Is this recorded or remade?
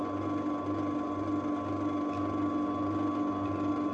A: recorded